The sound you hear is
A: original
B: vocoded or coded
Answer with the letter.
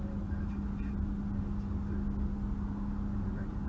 A